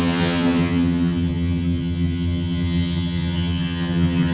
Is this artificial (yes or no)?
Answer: yes